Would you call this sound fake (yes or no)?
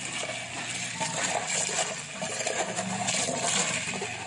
no